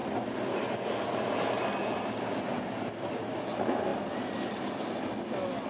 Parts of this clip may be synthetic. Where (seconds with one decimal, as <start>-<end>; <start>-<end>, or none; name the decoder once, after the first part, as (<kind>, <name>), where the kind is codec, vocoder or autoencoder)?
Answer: none